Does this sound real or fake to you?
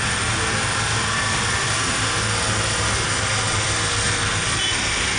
real